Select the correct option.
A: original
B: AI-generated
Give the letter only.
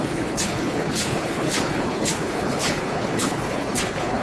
B